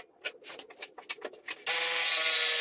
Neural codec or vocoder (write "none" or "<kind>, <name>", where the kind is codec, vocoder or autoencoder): none